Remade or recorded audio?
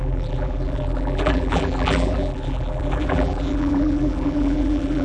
remade